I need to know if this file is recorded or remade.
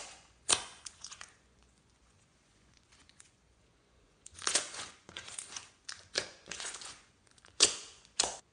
remade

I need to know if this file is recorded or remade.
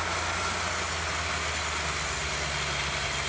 recorded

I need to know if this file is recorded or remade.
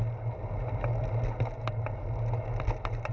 recorded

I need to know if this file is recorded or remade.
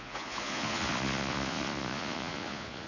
remade